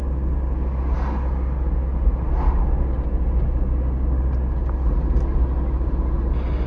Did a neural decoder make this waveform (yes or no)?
no